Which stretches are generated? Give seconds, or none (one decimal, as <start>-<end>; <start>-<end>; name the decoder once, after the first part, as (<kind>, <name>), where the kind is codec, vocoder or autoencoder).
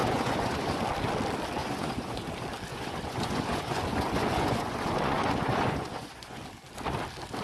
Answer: 0.0-0.8 (vocoder, Vocos); 1.6-2.3; 2.7-6.4